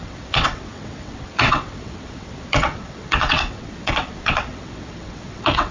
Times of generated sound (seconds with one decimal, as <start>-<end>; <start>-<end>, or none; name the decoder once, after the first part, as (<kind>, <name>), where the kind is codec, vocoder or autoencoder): 0.0-5.7 (vocoder, WaveNeXt)